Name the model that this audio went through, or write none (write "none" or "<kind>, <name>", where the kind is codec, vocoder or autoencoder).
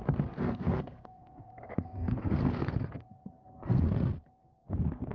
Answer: codec, SNAC